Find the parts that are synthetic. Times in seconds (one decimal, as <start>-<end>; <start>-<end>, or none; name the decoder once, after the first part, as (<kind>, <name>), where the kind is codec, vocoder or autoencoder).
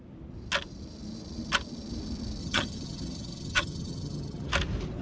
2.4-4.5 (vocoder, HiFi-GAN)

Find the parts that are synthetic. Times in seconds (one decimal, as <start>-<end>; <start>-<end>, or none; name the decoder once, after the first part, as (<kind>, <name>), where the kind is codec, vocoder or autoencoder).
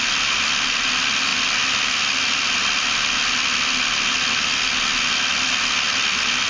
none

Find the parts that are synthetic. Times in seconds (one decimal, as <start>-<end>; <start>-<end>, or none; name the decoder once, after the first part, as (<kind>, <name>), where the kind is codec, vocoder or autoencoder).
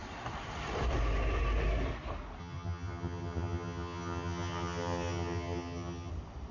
2.4-6.1 (vocoder, HiFi-GAN)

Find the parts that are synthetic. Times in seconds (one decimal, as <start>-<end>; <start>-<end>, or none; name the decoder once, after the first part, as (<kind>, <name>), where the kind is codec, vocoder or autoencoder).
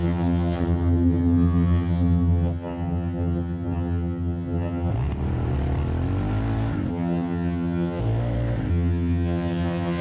0.0-4.9 (vocoder, HiFi-GAN); 6.9-8.0; 8.7-10.0